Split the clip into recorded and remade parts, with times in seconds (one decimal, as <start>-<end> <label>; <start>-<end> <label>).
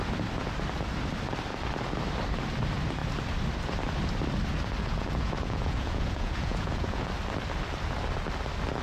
0.0-4.8 recorded; 4.8-7.1 remade; 7.1-8.8 recorded